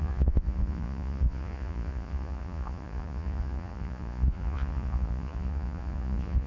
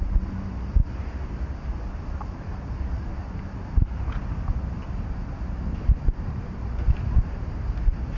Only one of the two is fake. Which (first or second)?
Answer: first